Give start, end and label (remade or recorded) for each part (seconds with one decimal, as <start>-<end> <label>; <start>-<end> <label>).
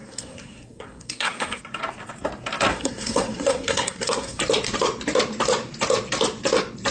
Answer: 0.0-1.6 remade; 1.6-2.7 recorded; 2.7-4.4 remade; 4.4-6.9 recorded